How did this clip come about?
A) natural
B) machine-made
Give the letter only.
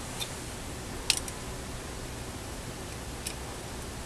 A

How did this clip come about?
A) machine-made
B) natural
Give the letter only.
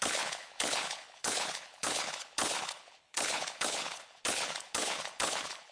A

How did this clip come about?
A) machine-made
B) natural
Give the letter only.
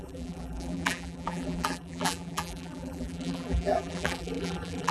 A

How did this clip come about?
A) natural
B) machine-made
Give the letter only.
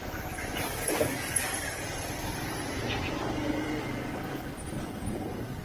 B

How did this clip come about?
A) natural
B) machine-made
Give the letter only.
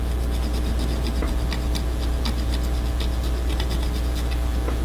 A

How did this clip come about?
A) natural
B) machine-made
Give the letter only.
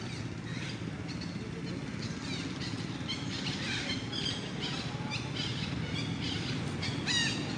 A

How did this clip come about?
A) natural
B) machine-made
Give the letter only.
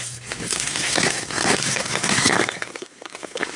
B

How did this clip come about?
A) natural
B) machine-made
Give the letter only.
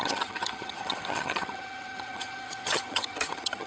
B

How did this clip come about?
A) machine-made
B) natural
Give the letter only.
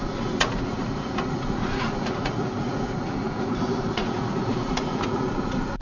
A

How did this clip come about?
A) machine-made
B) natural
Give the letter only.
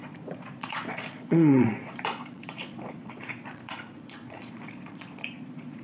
A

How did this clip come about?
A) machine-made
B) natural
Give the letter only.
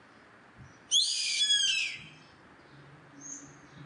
B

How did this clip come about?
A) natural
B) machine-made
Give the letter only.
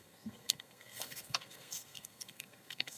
B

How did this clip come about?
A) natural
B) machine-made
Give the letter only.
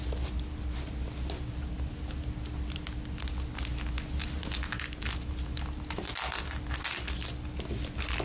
A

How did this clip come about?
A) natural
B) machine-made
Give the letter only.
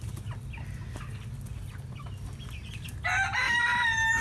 A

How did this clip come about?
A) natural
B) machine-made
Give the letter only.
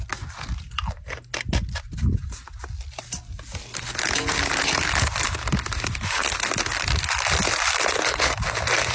A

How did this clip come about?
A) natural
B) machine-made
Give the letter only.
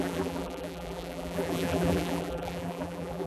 B